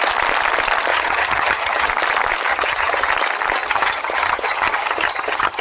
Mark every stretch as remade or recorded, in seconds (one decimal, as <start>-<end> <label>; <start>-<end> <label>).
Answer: 0.0-0.9 recorded; 0.9-1.9 remade; 1.9-2.5 recorded; 2.5-3.1 remade; 3.1-3.6 recorded; 3.6-5.6 remade